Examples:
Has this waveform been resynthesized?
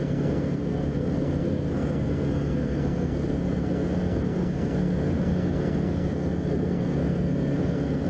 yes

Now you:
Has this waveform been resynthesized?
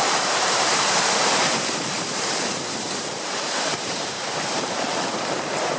yes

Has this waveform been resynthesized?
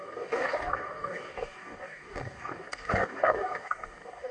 yes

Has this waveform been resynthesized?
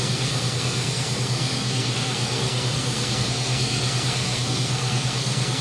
yes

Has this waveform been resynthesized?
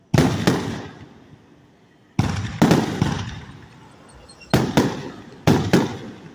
no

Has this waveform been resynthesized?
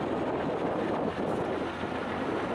no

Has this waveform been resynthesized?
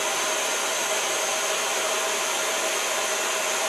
no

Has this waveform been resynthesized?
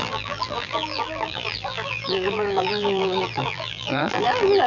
yes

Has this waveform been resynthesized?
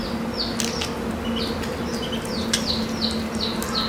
no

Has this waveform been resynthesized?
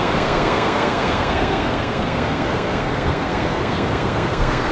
yes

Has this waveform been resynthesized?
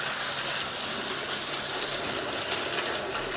no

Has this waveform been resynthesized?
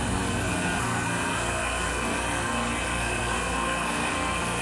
yes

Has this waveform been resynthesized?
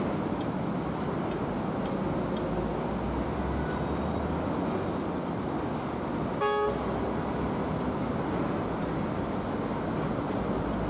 no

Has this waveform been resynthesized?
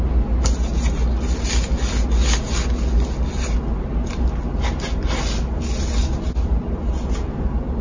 no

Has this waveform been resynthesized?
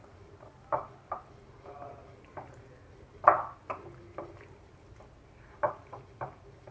no